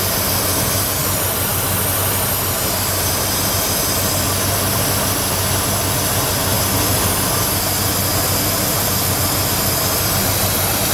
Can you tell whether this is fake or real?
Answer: real